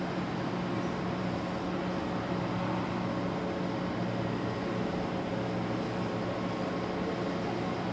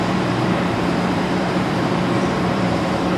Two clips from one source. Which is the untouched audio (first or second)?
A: first